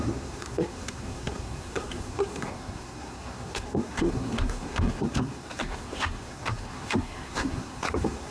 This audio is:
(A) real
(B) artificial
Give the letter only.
B